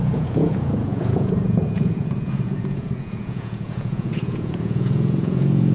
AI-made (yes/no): yes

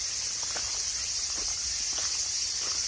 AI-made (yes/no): no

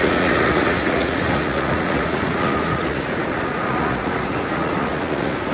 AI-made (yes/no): yes